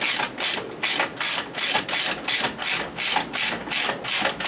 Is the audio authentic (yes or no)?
yes